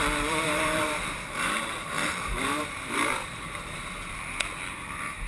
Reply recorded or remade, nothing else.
remade